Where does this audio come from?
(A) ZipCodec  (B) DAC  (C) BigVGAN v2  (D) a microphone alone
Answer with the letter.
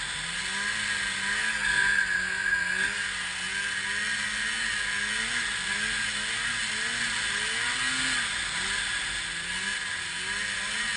D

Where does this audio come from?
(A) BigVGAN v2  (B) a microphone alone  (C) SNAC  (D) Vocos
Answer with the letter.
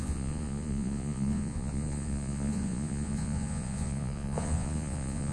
D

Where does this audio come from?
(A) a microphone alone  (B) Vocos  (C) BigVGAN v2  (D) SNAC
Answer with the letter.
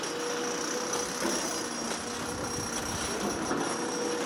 A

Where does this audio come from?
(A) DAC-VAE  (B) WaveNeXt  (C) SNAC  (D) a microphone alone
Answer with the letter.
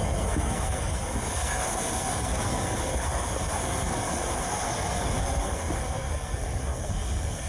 C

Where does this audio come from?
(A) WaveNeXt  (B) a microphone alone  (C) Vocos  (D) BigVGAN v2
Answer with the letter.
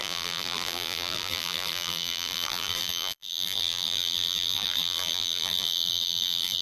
D